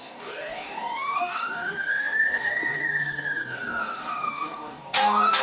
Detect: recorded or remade remade